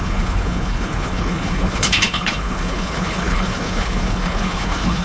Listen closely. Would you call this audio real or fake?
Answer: fake